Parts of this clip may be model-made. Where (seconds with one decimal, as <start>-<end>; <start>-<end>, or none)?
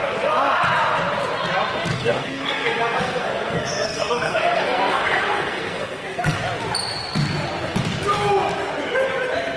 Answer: 1.9-6.4